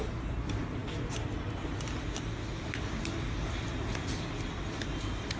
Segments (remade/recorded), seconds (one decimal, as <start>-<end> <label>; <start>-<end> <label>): 0.0-5.4 recorded